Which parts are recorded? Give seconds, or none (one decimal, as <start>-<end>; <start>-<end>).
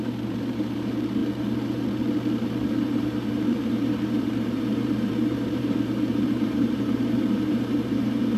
1.2-3.0